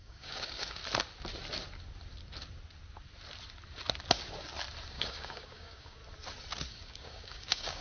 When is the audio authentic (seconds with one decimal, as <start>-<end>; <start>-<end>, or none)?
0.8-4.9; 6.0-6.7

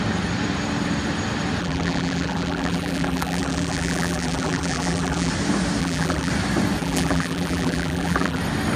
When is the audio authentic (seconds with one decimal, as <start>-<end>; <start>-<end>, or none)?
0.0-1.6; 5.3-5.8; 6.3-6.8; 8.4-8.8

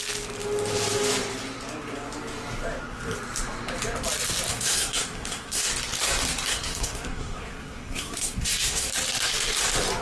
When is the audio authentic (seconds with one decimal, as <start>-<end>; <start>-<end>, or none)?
0.0-4.5; 5.7-6.5; 8.9-10.0

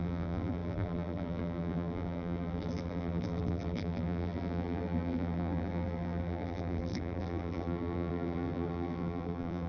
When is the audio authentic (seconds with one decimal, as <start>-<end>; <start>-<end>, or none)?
none

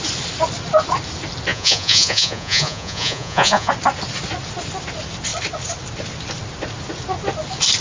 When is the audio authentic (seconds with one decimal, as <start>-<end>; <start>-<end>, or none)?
0.0-1.5; 3.7-7.8